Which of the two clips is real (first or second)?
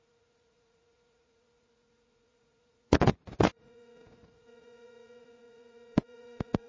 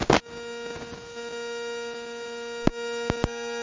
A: second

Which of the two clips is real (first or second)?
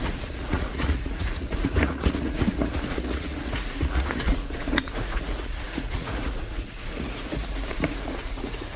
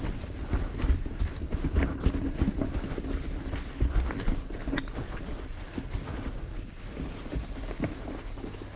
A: second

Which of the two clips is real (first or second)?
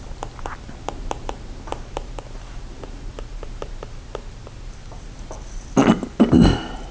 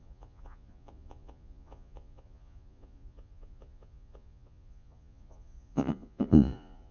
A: first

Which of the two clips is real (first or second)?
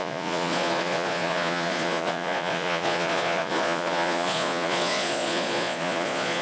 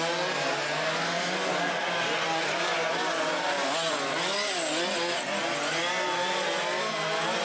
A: second